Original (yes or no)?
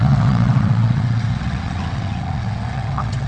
no